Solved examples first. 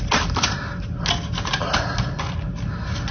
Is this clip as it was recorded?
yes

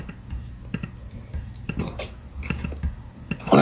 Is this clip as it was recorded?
yes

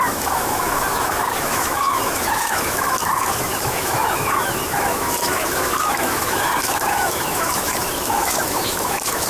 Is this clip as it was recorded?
no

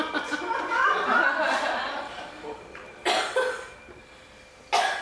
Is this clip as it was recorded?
yes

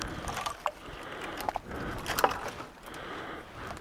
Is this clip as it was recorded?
yes